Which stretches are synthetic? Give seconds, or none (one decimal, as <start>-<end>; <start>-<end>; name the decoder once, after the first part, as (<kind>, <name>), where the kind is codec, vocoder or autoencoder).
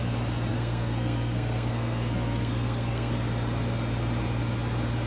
0.5-3.1 (codec, SNAC)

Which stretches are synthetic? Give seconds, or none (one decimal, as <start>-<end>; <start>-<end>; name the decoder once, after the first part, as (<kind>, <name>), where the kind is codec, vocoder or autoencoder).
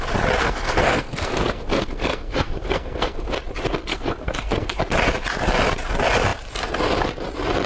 0.4-3.3 (codec, SNAC); 3.9-4.8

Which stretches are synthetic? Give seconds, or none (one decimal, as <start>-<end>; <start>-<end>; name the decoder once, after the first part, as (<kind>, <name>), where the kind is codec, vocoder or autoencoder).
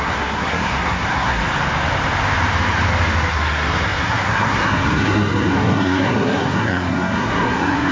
0.0-1.4 (codec, SNAC); 3.3-7.9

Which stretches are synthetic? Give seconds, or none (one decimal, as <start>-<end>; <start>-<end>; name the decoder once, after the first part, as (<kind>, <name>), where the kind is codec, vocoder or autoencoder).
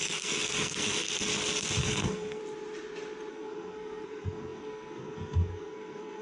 0.0-1.3 (codec, SNAC); 1.8-2.4; 3.3-6.2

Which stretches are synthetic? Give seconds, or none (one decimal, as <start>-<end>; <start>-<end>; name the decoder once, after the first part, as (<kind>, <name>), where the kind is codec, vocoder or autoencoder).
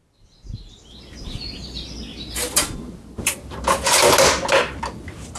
none